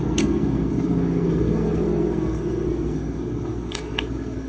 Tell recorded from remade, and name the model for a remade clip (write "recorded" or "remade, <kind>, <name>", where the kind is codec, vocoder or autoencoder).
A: remade, codec, SNAC